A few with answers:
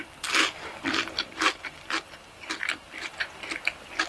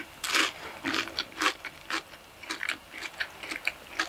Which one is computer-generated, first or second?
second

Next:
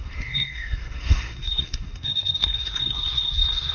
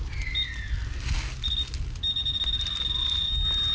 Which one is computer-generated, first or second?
first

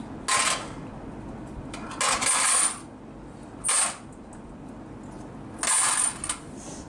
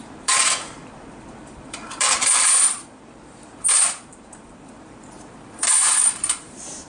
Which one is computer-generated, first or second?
second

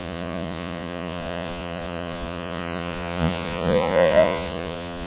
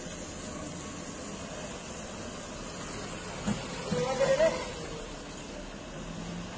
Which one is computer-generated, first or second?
first